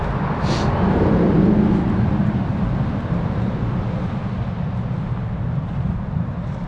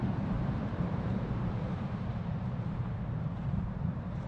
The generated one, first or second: second